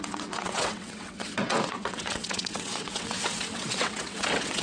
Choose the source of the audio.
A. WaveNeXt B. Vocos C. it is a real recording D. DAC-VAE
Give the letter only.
A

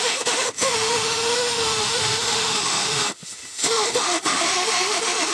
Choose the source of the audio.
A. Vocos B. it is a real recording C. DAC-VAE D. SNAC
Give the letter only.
C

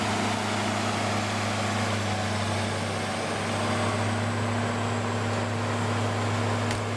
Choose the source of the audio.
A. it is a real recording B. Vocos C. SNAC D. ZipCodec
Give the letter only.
A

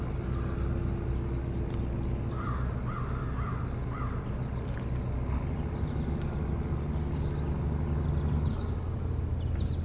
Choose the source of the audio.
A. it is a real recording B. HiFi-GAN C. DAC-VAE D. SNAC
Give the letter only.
A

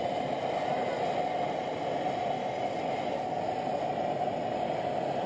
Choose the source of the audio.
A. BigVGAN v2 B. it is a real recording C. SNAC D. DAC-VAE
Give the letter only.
B